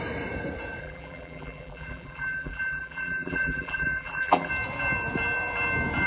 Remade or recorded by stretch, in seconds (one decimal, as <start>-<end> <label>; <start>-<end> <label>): 0.0-0.8 recorded; 0.8-4.5 remade; 4.5-6.1 recorded